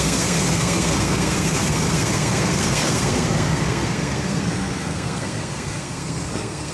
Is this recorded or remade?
remade